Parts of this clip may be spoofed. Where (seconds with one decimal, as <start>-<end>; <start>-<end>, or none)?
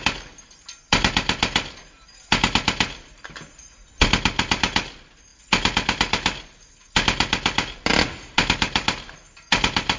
none